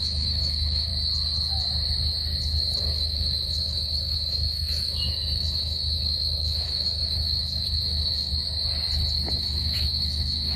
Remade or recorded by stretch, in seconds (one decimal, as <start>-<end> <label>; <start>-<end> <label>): 0.0-0.9 remade; 0.9-2.8 recorded; 2.8-8.3 remade; 8.3-9.3 recorded; 9.3-10.6 remade